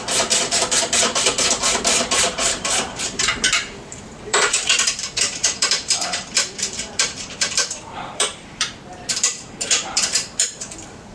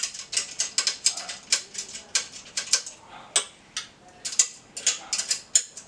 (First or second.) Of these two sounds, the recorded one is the second